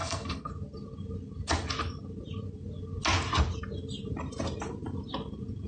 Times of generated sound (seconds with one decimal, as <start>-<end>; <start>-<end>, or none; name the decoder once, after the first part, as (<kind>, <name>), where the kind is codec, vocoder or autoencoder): 0.0-0.5 (codec, SNAC)